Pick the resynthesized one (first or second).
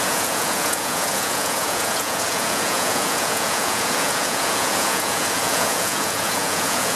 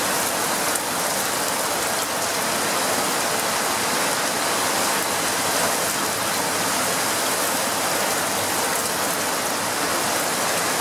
first